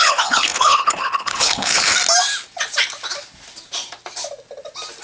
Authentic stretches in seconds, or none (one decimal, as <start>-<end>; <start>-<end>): 1.9-5.0